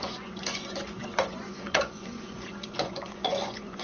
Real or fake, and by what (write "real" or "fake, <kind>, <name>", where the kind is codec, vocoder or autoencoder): fake, vocoder, Vocos